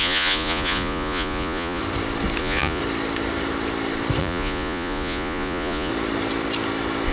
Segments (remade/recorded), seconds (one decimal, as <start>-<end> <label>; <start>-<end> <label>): 0.0-1.8 remade; 1.8-2.4 recorded; 2.4-2.8 remade; 2.8-4.2 recorded; 4.2-5.9 remade; 5.9-7.1 recorded